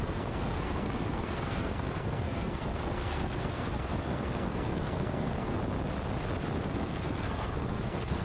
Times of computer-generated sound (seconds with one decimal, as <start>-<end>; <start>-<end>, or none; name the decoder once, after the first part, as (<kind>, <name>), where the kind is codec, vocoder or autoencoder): 0.0-5.6 (codec, SNAC); 6.7-8.2